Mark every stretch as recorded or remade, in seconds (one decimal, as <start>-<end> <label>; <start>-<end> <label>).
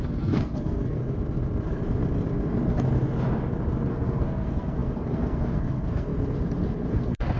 0.0-1.0 remade; 1.0-3.9 recorded; 3.9-6.1 remade; 6.1-6.9 recorded; 6.9-7.4 remade